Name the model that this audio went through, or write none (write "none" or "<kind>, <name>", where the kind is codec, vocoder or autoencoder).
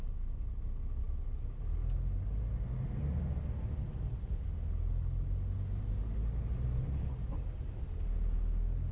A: none